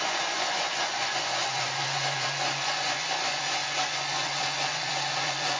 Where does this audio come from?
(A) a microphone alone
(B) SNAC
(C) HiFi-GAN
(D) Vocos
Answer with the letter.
D